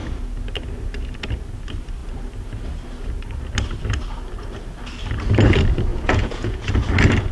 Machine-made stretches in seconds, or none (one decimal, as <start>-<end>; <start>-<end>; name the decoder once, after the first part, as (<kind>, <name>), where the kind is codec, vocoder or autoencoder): 5.9-6.7 (vocoder, Vocos)